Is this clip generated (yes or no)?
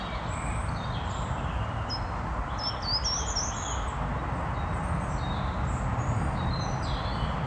no